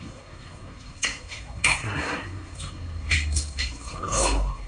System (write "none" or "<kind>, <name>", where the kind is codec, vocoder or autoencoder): codec, SNAC